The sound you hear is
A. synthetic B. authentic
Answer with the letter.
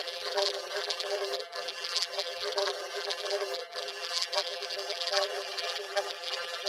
A